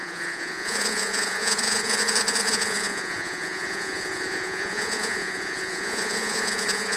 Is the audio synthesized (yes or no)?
yes